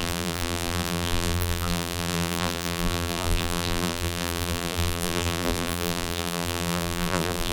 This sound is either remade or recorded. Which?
remade